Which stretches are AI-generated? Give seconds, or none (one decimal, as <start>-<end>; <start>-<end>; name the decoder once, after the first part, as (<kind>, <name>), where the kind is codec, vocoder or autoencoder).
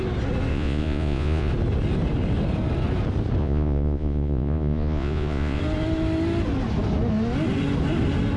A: 0.5-1.5 (vocoder, Vocos); 3.4-5.6